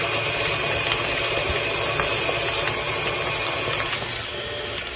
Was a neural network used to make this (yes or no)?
no